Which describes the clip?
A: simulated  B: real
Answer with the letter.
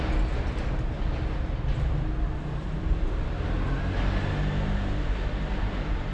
B